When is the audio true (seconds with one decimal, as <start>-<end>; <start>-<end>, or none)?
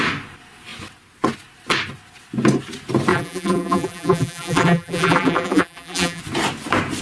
0.0-3.1; 6.2-7.0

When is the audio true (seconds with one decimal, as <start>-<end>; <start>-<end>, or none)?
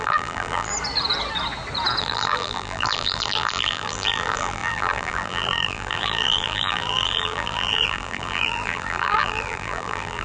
0.7-2.0